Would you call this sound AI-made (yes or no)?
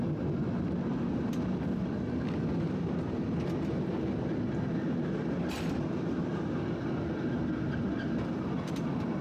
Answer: no